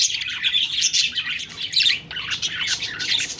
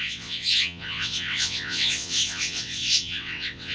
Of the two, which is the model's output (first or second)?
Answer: second